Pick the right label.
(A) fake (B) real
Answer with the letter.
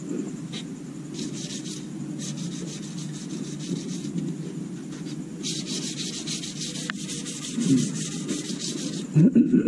B